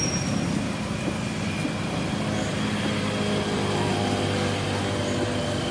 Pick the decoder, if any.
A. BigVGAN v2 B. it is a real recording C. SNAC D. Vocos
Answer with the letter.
B